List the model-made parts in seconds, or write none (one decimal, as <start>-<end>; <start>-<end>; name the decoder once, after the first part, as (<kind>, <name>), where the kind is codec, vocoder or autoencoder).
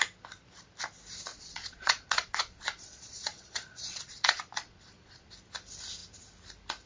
1.3-5.3 (vocoder, Vocos)